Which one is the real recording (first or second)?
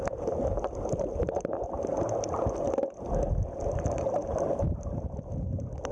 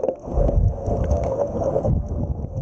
first